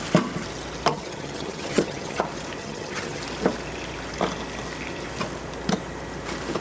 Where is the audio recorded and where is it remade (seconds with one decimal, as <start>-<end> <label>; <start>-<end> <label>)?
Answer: 0.0-0.9 recorded; 0.9-2.2 remade; 2.2-2.6 recorded; 2.6-3.2 remade; 3.2-6.6 recorded